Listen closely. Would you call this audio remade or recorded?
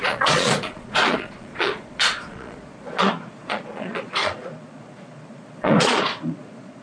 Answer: remade